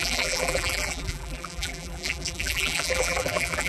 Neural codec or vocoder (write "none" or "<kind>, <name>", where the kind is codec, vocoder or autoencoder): vocoder, BigVGAN v2